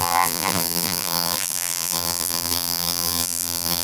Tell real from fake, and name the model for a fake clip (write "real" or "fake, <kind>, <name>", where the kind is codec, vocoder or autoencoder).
fake, vocoder, BigVGAN v2